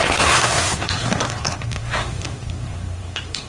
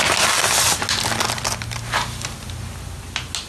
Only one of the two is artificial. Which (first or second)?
first